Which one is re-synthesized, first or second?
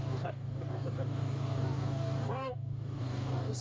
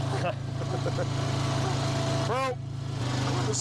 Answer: first